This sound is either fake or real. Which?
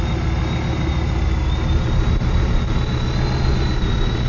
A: real